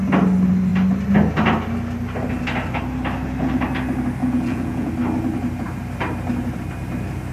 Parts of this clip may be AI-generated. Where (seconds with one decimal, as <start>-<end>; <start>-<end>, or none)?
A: 4.2-4.9